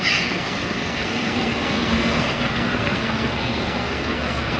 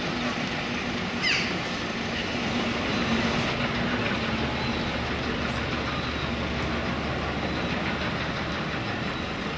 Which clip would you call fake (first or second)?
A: first